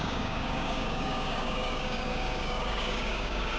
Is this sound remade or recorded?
remade